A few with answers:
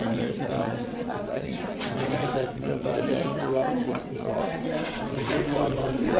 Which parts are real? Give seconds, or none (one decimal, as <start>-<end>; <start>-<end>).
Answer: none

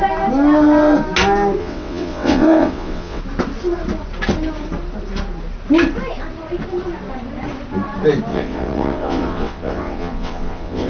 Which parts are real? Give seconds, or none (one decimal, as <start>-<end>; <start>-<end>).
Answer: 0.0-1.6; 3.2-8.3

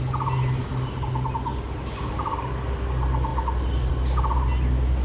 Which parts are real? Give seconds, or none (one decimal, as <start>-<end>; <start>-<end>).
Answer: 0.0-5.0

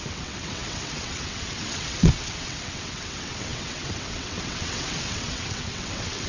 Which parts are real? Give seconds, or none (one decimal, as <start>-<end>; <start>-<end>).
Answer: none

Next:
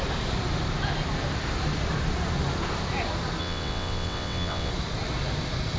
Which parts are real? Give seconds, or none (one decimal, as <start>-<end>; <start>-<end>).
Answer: 0.0-3.4; 4.7-5.8

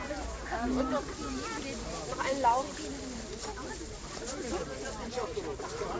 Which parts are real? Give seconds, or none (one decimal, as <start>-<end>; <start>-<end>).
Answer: 0.0-6.0

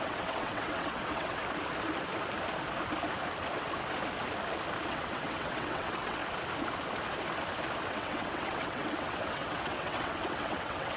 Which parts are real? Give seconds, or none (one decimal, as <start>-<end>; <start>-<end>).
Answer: 1.4-4.8; 6.2-7.9

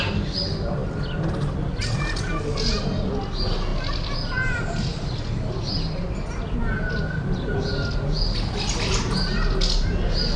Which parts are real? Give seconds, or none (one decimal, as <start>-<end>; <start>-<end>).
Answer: 0.0-10.4